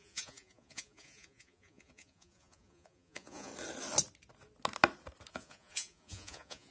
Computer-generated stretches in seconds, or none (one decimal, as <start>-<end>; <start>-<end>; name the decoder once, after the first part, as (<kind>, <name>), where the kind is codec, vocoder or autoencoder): 0.0-3.5 (vocoder, Vocos); 5.3-6.7